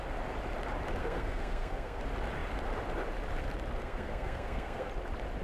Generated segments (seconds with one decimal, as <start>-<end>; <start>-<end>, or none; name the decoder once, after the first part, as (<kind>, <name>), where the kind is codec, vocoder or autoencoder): 1.0-2.0 (codec, SNAC); 3.8-4.9